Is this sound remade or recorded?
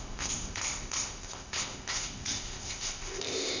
remade